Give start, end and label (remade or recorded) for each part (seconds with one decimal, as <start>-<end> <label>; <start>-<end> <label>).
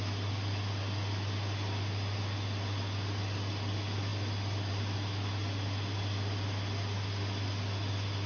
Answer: 0.0-8.3 recorded